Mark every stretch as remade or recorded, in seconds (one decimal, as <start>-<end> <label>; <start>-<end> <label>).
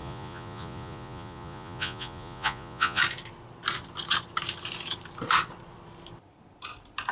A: 0.0-3.0 remade; 3.0-7.1 recorded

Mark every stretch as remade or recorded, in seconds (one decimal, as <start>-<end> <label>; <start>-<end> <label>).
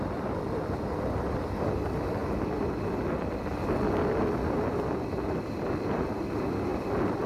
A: 0.0-7.3 recorded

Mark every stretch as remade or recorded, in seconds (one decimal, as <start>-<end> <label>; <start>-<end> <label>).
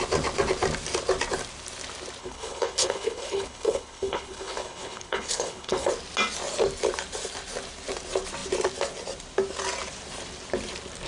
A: 0.0-2.2 recorded; 2.2-5.9 remade; 5.9-11.1 recorded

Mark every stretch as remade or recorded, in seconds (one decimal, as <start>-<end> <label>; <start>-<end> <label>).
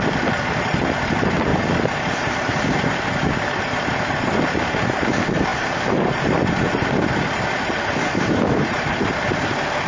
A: 0.0-1.5 remade; 1.5-2.3 recorded; 2.3-9.9 remade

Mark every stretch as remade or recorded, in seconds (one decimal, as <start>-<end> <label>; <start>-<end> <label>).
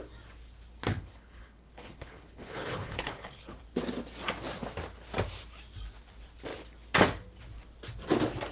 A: 0.0-0.9 recorded; 0.9-3.6 remade; 3.6-8.5 recorded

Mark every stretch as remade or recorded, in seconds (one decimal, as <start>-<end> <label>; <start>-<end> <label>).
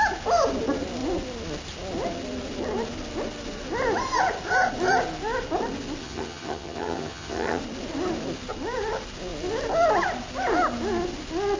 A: 0.0-6.0 recorded; 6.0-7.6 remade; 7.6-11.6 recorded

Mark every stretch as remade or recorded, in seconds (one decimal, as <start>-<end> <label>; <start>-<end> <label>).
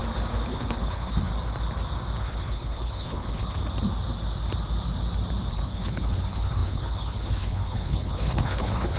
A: 0.0-0.5 recorded; 0.5-1.3 remade; 1.3-2.2 recorded; 2.2-3.6 remade; 3.6-5.5 recorded; 5.5-9.0 remade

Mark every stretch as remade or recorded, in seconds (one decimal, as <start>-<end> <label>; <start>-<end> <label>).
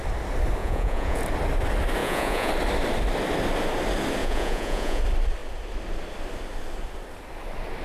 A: 0.0-0.6 recorded; 0.6-1.2 remade; 1.2-2.0 recorded; 2.0-2.5 remade; 2.5-4.2 recorded; 4.2-5.0 remade; 5.0-7.8 recorded